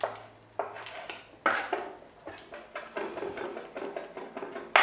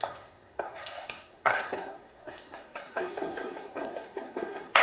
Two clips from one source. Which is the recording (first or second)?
first